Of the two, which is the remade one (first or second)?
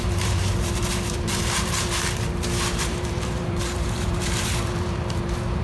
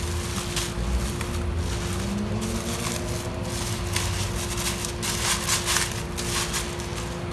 first